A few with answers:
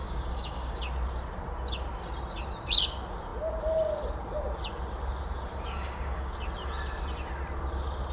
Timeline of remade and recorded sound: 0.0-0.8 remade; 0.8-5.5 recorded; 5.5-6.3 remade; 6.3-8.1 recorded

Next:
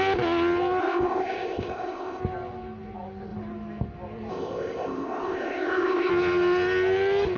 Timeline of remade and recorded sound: 0.0-0.8 recorded; 0.8-2.2 remade; 2.2-4.3 recorded; 4.3-6.1 remade; 6.1-7.4 recorded

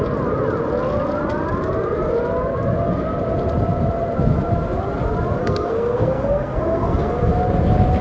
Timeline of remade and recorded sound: 0.0-5.4 recorded; 5.4-7.3 remade; 7.3-8.0 recorded